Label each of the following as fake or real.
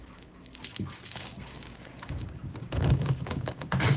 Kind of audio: fake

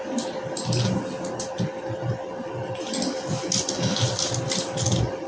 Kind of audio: real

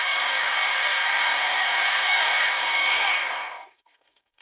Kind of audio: fake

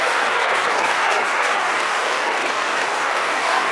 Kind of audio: fake